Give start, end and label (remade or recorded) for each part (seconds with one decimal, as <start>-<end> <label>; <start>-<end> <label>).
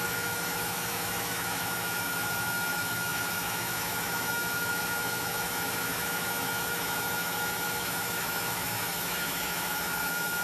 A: 0.0-10.4 remade